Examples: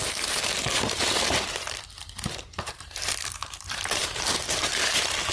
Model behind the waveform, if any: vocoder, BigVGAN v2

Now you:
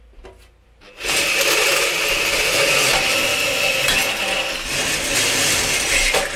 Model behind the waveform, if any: none